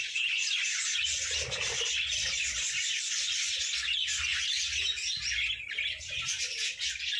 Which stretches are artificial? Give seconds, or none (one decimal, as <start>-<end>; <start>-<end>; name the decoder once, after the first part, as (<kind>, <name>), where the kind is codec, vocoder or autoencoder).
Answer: none